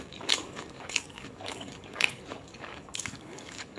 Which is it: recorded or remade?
remade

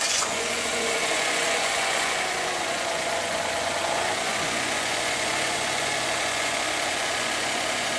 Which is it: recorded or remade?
remade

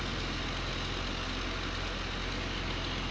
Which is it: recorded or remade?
recorded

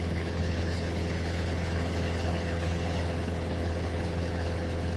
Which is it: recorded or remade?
remade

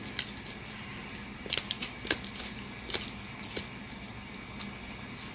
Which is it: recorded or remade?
recorded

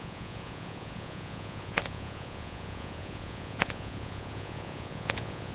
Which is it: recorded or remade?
remade